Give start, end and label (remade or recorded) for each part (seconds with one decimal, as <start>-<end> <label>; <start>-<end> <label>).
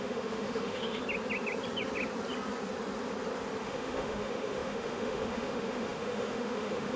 0.0-1.0 remade; 1.0-3.6 recorded; 3.6-7.0 remade